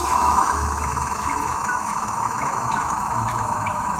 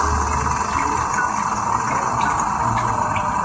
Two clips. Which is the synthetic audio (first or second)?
first